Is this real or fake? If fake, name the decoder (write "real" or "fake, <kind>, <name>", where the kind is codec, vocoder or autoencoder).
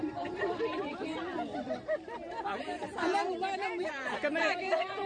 fake, vocoder, BigVGAN v2